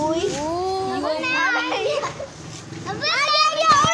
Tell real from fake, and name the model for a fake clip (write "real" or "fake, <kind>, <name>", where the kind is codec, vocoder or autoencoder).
real